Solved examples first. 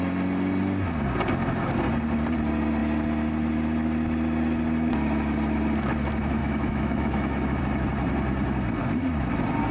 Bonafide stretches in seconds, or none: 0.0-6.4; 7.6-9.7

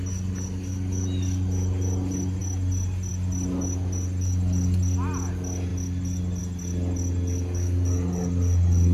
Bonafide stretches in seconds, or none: 0.0-8.9

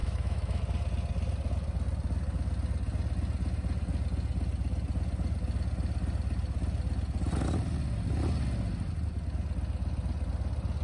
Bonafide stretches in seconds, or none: 0.6-10.8

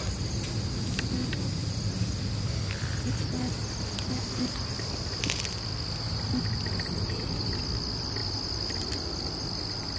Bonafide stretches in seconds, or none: 0.0-10.0

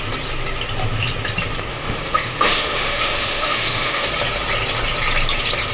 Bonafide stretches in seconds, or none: 0.0-1.7; 4.1-5.7